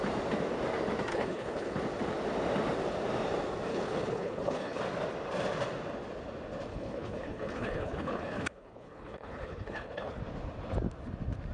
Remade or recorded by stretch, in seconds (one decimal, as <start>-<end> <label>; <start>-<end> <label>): 0.0-1.1 recorded; 1.1-1.8 remade; 1.8-3.7 recorded; 3.7-4.8 remade; 4.8-6.7 recorded; 6.7-10.2 remade; 10.2-11.5 recorded